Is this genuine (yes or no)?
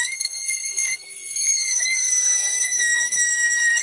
no